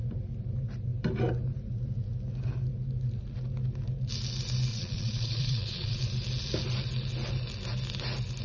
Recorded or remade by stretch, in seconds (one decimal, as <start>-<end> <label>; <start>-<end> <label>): 0.0-4.7 recorded; 4.7-6.0 remade; 6.0-8.4 recorded